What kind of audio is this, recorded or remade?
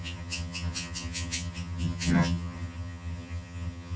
remade